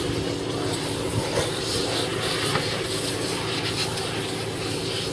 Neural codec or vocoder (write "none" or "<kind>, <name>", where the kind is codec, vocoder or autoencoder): none